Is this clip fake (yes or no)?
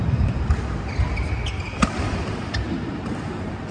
no